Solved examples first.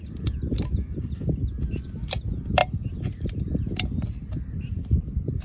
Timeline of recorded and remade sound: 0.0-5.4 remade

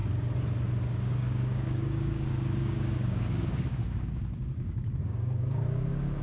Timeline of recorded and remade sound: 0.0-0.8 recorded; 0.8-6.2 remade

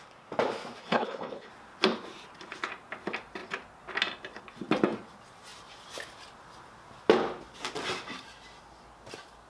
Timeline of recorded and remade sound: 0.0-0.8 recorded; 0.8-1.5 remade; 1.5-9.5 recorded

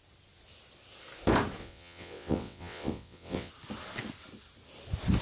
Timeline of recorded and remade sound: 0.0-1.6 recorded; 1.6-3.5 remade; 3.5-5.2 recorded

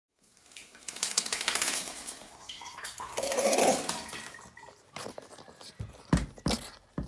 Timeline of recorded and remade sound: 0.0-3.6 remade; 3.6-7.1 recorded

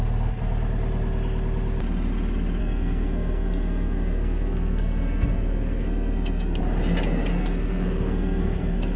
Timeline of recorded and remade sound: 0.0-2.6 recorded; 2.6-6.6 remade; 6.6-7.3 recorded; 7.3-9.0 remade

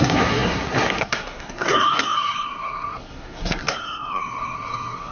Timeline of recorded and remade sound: 0.0-5.1 remade